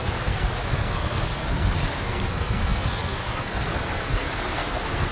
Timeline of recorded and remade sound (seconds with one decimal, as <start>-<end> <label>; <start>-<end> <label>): 0.0-5.1 remade